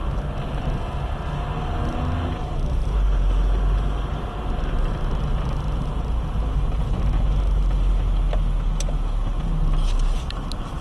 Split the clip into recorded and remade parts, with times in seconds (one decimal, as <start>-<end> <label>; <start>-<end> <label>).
0.0-10.8 recorded